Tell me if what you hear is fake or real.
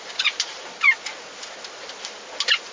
real